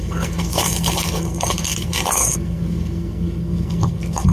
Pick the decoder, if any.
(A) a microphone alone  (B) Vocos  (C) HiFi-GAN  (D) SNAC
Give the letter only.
D